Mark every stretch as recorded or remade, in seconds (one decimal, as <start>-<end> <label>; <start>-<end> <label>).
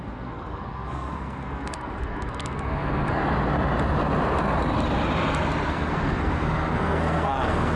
0.0-3.2 remade; 3.2-5.7 recorded; 5.7-7.8 remade